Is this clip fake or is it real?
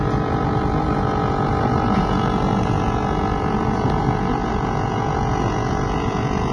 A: fake